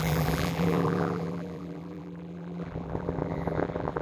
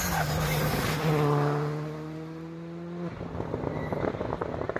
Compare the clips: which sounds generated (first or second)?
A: first